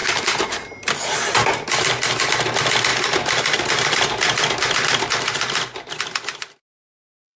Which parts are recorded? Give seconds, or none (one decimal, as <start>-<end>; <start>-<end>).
2.3-2.9